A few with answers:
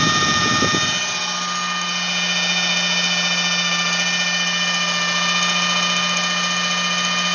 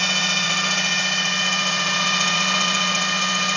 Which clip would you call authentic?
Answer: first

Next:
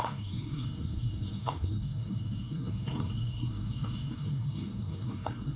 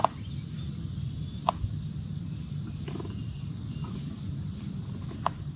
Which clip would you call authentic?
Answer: second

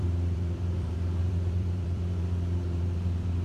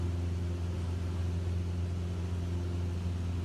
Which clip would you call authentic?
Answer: second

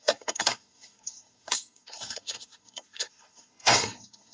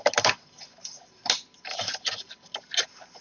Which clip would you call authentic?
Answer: second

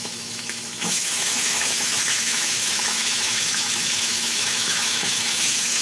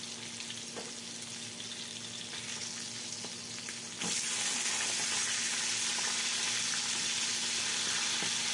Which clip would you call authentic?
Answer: second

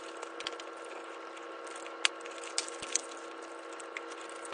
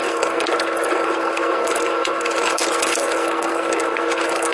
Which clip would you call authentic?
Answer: first